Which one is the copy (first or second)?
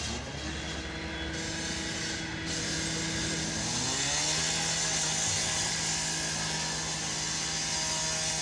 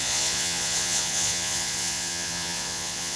second